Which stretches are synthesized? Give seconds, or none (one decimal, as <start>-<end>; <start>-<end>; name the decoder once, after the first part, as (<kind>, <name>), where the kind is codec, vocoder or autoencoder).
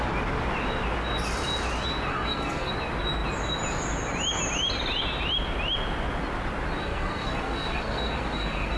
2.1-2.7 (codec, SNAC); 6.8-8.8